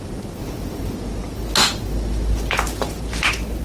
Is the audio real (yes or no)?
yes